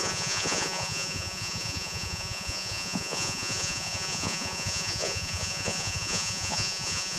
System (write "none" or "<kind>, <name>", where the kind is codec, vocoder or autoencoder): vocoder, Vocos